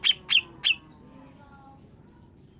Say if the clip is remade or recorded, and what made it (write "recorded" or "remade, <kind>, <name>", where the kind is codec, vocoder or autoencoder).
recorded